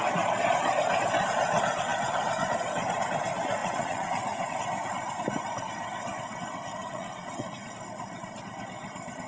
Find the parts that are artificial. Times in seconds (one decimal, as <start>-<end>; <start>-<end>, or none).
3.6-4.6; 6.7-7.7